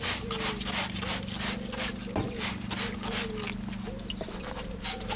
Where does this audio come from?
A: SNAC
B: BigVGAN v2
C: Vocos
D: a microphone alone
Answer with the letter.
D